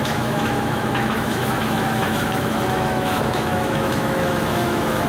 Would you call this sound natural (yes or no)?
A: no